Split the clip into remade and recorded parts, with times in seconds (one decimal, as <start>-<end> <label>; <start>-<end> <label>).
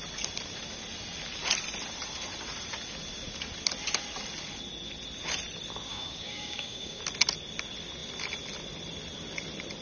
0.0-5.9 recorded; 5.9-7.0 remade; 7.0-9.8 recorded